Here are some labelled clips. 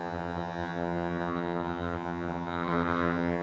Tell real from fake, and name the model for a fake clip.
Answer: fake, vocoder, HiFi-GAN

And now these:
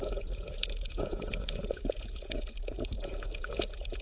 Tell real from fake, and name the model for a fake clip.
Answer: fake, vocoder, Vocos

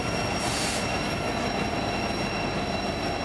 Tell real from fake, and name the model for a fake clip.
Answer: real